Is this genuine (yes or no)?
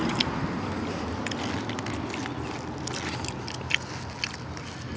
yes